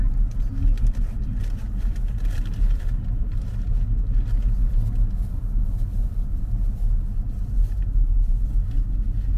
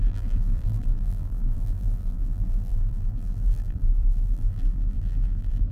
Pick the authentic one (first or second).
first